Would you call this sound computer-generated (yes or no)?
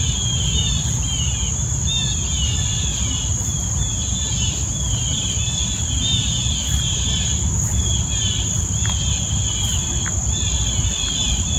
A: no